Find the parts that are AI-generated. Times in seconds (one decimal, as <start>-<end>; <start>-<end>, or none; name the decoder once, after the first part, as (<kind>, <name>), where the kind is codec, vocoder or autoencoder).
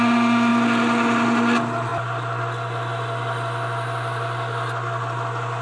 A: none